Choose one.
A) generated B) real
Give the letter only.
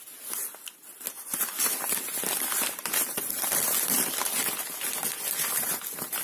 B